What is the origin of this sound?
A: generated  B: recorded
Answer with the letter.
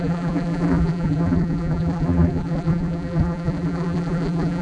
A